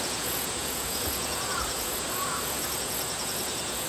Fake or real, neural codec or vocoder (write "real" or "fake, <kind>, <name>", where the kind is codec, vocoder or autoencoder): fake, vocoder, Vocos